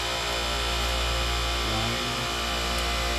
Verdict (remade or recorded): recorded